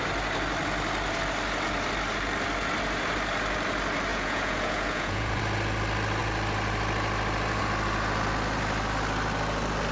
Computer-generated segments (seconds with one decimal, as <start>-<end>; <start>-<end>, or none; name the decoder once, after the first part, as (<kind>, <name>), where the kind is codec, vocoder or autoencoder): 4.1-5.4 (vocoder, Vocos)